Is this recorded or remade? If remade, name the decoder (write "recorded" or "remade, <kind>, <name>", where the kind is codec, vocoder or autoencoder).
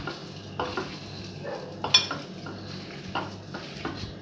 recorded